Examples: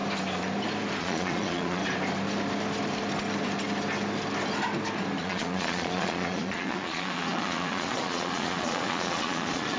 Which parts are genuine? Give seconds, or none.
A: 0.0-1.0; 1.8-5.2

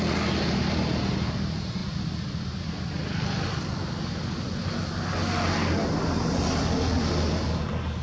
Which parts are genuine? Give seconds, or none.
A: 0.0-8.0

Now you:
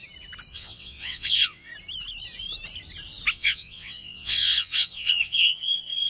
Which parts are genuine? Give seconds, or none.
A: 0.0-0.5; 1.7-3.3

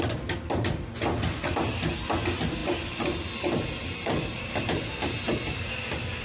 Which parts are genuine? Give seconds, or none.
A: 0.0-6.2